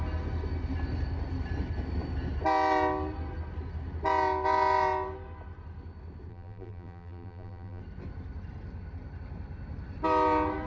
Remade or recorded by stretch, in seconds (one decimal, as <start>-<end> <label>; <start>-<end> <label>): 0.0-6.3 recorded; 6.3-7.8 remade; 7.8-10.7 recorded